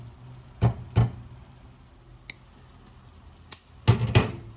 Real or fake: real